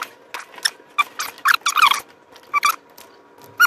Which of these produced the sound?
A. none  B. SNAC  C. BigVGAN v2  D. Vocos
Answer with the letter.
A